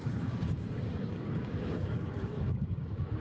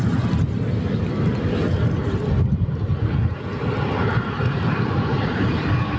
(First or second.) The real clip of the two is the second